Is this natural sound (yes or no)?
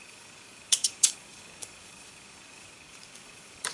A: no